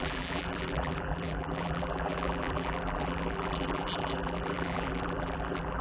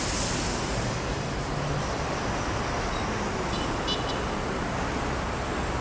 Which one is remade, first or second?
first